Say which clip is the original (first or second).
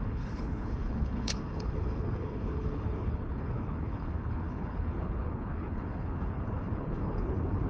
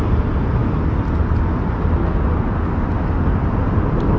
second